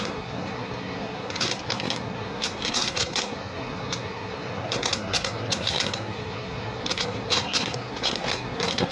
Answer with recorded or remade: remade